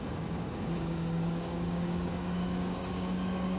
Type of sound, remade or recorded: remade